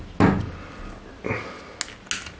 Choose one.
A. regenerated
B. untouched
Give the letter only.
B